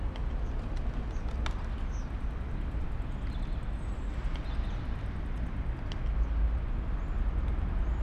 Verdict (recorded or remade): recorded